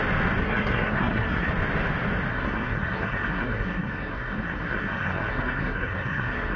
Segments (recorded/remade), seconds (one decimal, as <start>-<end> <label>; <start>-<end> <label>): 0.0-0.4 recorded; 0.4-1.5 remade; 1.5-2.3 recorded; 2.3-6.6 remade